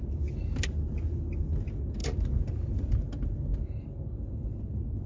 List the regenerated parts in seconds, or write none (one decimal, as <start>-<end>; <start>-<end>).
none